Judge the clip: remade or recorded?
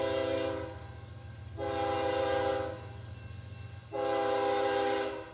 recorded